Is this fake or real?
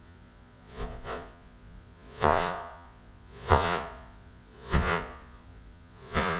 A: fake